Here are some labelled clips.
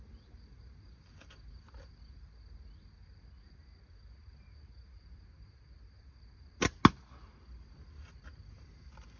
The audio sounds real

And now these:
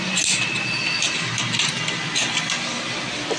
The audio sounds real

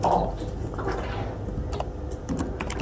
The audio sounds real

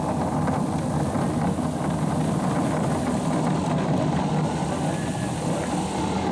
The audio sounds real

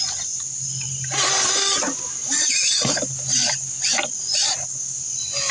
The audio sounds fake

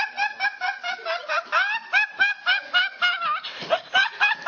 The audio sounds fake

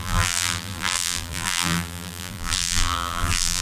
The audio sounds fake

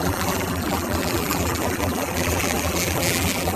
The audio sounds fake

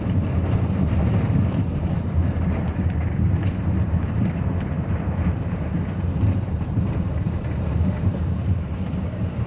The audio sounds fake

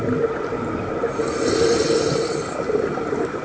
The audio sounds real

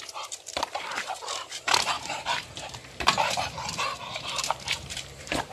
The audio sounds fake